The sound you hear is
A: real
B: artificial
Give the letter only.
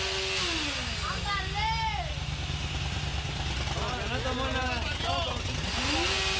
A